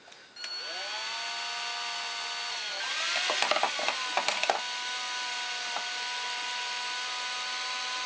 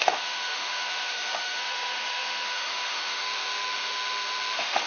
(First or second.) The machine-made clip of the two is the second